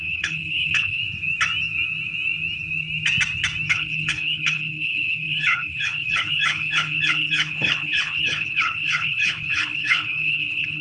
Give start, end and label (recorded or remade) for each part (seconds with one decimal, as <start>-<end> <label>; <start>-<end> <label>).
0.0-1.0 remade; 1.0-3.7 recorded; 3.7-10.8 remade